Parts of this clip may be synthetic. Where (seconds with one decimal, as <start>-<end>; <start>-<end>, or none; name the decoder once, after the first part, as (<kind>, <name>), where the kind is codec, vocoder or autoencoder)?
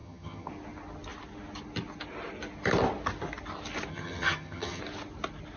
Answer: 0.0-0.5 (vocoder, HiFi-GAN); 3.9-4.8